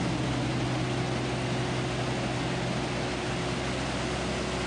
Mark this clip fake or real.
real